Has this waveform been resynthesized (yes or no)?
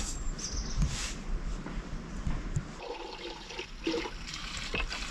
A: no